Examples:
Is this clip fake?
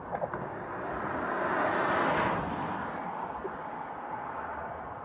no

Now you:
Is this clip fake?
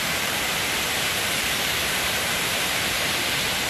yes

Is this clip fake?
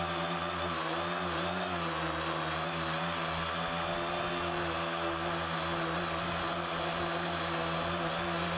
no